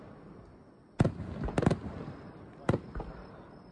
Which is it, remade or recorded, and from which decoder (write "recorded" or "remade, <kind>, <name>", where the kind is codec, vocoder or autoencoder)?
recorded